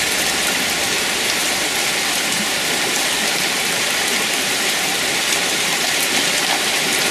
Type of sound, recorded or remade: remade